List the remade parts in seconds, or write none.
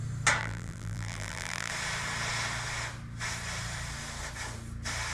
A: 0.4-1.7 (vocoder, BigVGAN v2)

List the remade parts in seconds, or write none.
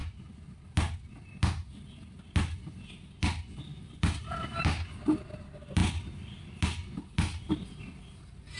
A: 3.7-4.2 (vocoder, BigVGAN v2)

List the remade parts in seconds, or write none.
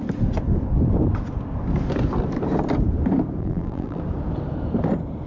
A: 3.4-4.0 (vocoder, BigVGAN v2)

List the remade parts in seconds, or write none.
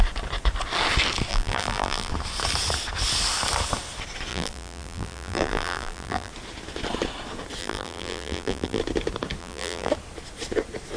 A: 1.3-2.1 (vocoder, BigVGAN v2); 4.3-6.3; 7.6-8.8; 9.4-9.9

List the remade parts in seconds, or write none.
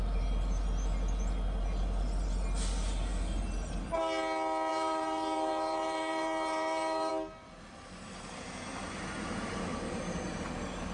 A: 4.7-7.1 (vocoder, BigVGAN v2)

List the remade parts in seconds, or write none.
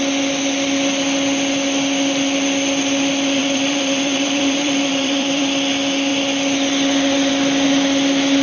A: 3.4-5.4 (vocoder, BigVGAN v2)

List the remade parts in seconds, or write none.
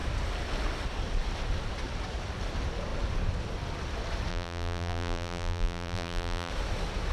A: 4.3-6.5 (vocoder, BigVGAN v2)